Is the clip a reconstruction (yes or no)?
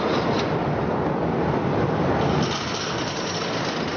no